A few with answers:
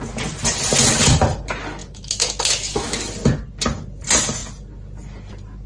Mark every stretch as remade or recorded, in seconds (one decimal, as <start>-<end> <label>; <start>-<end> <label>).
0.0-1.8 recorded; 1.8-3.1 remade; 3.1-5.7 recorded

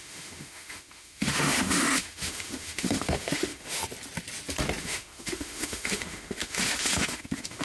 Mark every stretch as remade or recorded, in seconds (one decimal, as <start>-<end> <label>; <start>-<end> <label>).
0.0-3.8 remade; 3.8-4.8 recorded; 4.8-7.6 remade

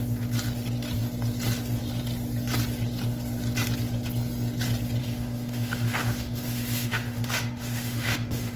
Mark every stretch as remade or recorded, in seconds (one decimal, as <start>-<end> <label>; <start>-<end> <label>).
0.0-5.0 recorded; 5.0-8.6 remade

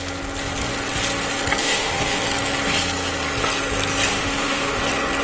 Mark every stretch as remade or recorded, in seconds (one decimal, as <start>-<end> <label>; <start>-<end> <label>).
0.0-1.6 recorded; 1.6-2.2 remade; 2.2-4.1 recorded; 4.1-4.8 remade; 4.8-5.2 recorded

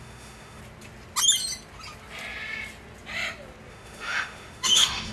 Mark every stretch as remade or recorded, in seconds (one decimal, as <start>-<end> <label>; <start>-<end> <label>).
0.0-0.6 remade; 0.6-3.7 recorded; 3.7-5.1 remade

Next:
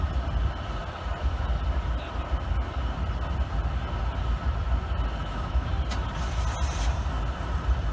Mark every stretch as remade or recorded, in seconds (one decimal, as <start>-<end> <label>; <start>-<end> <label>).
0.0-5.2 recorded; 5.2-5.7 remade; 5.7-7.9 recorded

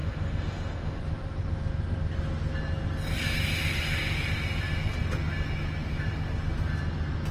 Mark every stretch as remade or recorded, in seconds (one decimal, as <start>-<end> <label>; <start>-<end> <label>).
0.0-1.0 remade; 1.0-7.3 recorded